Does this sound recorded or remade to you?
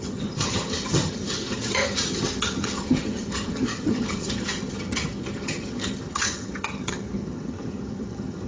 remade